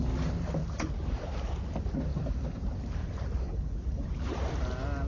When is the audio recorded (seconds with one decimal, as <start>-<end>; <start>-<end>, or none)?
0.0-0.6; 1.6-2.1; 4.5-5.1